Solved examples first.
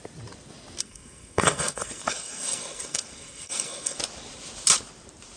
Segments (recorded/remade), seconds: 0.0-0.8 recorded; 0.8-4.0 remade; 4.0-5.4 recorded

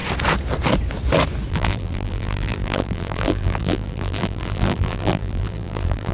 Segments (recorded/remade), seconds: 0.0-1.5 recorded; 1.5-6.1 remade

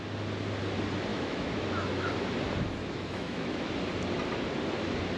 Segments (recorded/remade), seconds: 0.0-1.1 recorded; 1.1-2.1 remade; 2.1-2.8 recorded; 2.8-3.7 remade; 3.7-5.2 recorded

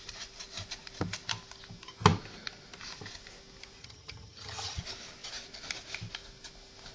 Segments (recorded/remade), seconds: 0.0-3.8 recorded; 3.8-4.8 remade; 4.8-6.9 recorded

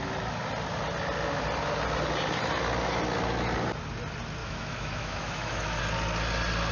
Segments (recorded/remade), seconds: 0.0-4.4 recorded; 4.4-5.8 remade; 5.8-6.7 recorded

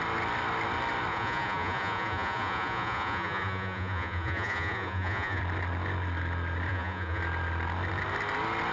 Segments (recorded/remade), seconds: 0.0-1.1 recorded; 1.1-5.4 remade; 5.4-6.7 recorded; 6.7-7.2 remade; 7.2-8.7 recorded

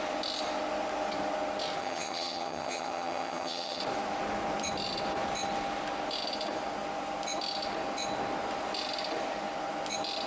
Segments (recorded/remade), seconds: 0.0-1.8 recorded; 1.8-3.8 remade; 3.8-10.3 recorded